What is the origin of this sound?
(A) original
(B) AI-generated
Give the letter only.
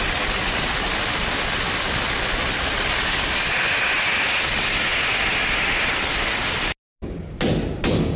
A